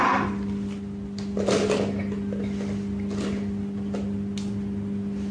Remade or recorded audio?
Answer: recorded